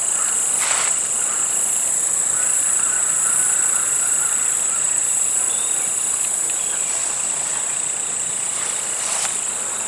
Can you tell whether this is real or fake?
real